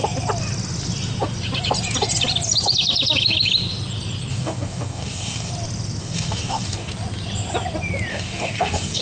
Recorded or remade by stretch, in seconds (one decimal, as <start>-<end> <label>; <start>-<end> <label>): 0.0-4.3 recorded; 4.3-5.5 remade; 5.5-6.0 recorded; 6.0-6.9 remade; 6.9-8.1 recorded; 8.1-9.0 remade